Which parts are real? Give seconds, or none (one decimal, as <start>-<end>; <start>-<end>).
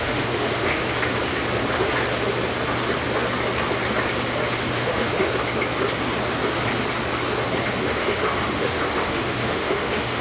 0.8-4.7; 5.3-7.6